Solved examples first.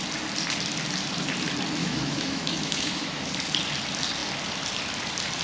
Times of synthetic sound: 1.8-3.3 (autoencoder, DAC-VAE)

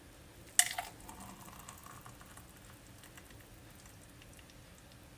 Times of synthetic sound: none

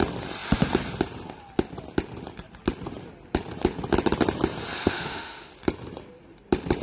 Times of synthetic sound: 4.8-5.5 (autoencoder, DAC-VAE)

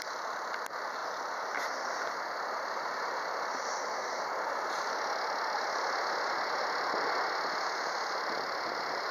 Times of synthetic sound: none

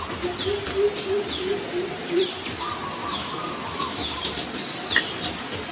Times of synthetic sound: 3.0-4.2 (autoencoder, DAC-VAE)

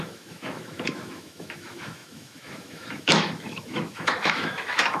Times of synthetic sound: 0.0-5.0 (autoencoder, DAC-VAE)

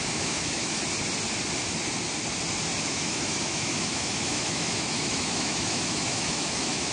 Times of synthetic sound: 0.0-0.8 (autoencoder, DAC-VAE); 2.8-6.9

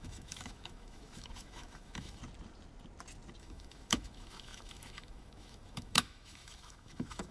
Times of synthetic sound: 0.0-2.2 (autoencoder, DAC-VAE); 3.4-7.3